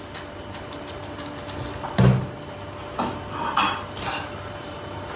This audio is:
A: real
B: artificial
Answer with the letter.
A